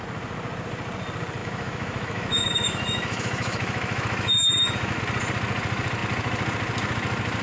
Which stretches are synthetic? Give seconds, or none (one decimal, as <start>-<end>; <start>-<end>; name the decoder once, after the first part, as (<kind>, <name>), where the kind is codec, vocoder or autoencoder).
1.4-5.0 (autoencoder, DAC-VAE)